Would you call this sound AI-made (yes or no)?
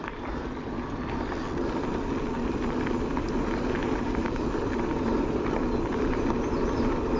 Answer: no